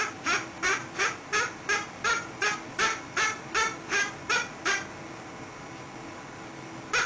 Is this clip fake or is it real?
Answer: real